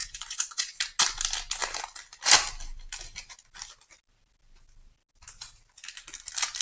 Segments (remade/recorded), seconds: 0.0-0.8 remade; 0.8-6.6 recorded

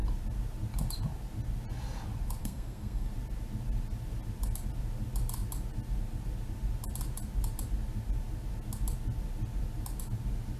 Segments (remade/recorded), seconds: 0.0-2.4 recorded; 2.4-3.1 remade; 3.1-10.6 recorded